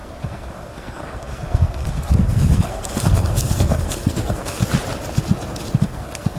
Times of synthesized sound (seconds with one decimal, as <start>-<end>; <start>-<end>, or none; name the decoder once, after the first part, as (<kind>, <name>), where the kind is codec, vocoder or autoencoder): 0.0-4.6 (codec, SNAC); 5.8-6.4

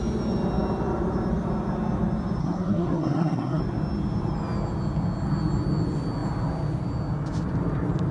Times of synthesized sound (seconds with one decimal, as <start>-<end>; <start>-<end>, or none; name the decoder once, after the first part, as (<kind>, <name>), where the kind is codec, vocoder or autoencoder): 2.4-3.6 (codec, SNAC)

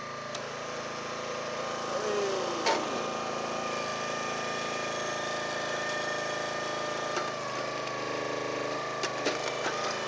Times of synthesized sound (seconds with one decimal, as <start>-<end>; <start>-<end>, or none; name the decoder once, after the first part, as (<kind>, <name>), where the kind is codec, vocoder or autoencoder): none

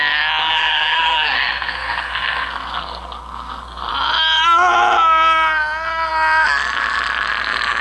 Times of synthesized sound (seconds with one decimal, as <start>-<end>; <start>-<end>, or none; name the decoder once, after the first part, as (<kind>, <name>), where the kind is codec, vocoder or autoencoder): 0.4-3.9 (codec, SNAC)

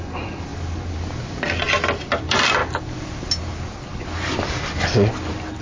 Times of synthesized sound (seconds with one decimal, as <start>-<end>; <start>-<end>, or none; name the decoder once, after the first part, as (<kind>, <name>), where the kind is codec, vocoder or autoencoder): none

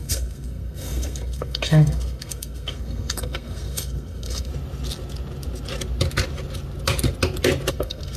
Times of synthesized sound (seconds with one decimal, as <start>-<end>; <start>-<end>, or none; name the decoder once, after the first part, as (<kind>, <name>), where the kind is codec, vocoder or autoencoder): 0.0-4.5 (codec, SNAC); 7.7-8.2

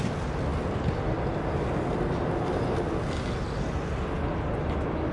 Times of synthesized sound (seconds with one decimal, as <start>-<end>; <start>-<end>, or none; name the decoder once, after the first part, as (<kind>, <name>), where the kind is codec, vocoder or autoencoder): none

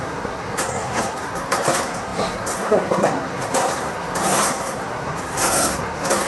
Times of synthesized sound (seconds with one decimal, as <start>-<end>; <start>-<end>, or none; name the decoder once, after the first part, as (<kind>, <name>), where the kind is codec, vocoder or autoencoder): 0.0-6.3 (codec, SNAC)